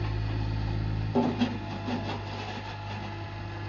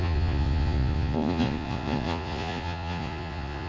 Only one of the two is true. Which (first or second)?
first